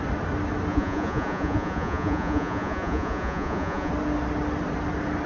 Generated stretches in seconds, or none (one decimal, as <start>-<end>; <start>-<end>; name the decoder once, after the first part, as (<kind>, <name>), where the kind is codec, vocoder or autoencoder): 0.7-3.9 (vocoder, Vocos)